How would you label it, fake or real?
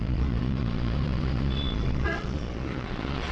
fake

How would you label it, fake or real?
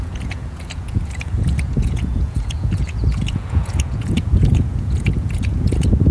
fake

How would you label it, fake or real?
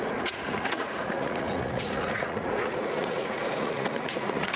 fake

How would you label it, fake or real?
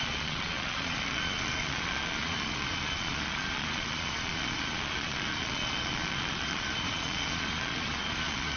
fake